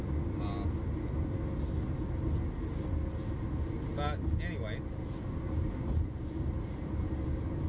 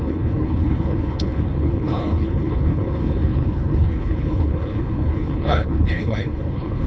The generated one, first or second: second